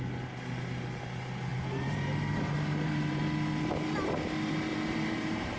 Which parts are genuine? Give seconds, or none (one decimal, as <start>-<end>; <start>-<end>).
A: 0.0-1.5; 3.2-4.7